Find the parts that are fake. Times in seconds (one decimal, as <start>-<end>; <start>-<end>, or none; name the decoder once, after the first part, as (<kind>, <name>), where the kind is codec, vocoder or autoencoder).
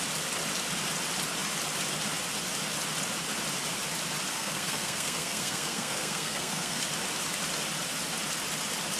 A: 4.3-6.8 (codec, SNAC)